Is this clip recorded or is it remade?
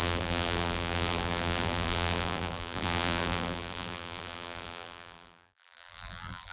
remade